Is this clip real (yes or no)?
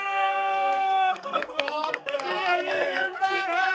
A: no